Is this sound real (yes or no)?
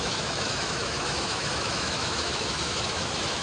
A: no